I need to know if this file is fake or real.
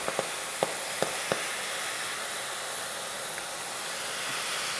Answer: real